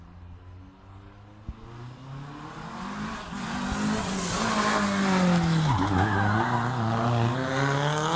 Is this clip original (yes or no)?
yes